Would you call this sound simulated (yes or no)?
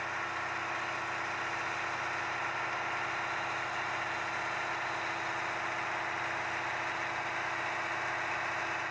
no